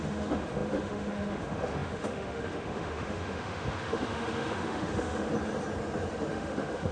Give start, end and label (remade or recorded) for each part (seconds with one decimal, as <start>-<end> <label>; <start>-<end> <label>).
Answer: 0.0-5.3 remade; 5.3-6.3 recorded; 6.3-6.9 remade